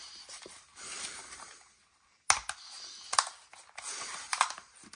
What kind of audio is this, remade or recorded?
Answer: recorded